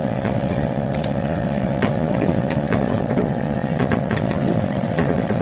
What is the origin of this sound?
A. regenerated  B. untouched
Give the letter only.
A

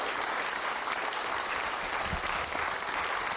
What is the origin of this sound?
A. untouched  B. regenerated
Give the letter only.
A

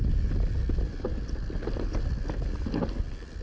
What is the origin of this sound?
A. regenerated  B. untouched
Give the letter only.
B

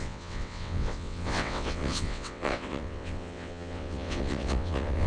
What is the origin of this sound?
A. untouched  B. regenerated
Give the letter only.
B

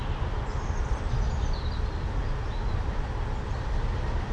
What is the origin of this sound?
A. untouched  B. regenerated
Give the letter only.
A